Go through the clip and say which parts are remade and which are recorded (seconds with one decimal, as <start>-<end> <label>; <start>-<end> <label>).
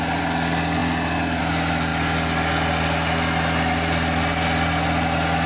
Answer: 0.0-5.5 recorded